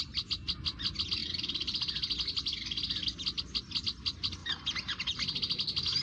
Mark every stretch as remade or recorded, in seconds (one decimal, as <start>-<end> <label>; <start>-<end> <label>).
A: 0.0-4.4 recorded; 4.4-4.9 remade; 4.9-6.0 recorded